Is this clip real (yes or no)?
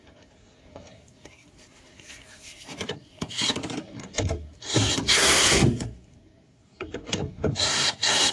no